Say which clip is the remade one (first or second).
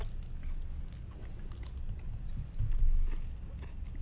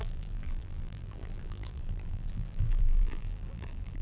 second